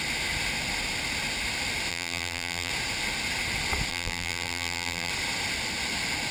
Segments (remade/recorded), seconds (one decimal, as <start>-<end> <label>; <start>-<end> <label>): 0.0-1.9 recorded; 1.9-2.7 remade; 2.7-3.9 recorded; 3.9-5.1 remade; 5.1-6.3 recorded